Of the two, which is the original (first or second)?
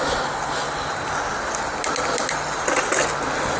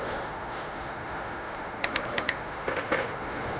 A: first